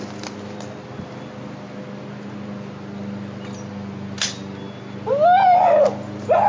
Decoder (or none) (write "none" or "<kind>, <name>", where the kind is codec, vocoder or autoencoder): none